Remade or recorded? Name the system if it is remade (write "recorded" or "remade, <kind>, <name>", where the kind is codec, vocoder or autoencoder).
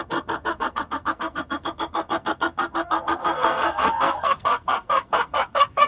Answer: remade, codec, SNAC